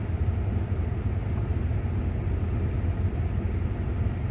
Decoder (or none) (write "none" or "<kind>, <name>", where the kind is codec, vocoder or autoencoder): none